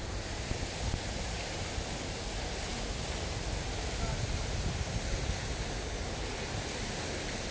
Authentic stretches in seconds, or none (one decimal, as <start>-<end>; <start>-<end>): 0.0-7.5